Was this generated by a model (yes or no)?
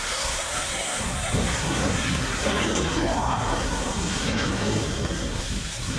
yes